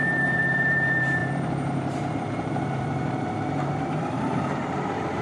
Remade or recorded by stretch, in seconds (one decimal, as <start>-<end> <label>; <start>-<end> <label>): 0.0-5.2 remade